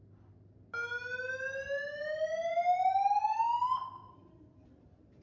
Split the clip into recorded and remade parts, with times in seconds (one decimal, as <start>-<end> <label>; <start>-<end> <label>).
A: 0.0-5.2 recorded